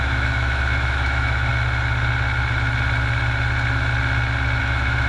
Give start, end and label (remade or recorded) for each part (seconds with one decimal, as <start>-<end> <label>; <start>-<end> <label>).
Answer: 0.0-1.5 remade; 1.5-4.6 recorded; 4.6-5.1 remade